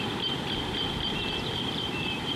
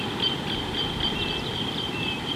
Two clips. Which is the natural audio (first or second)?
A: second